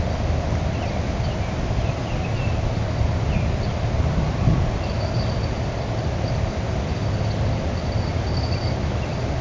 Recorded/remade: recorded